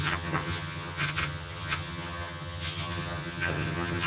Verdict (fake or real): fake